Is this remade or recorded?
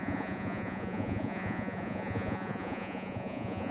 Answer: remade